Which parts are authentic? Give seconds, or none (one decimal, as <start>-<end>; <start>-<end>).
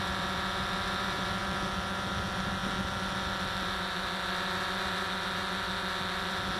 0.0-6.6